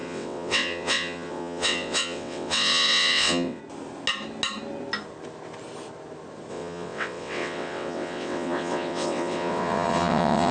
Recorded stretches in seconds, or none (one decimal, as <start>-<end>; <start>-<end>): 3.6-6.5